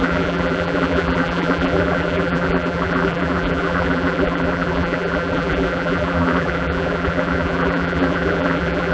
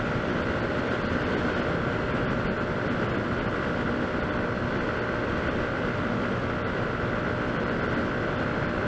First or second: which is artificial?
first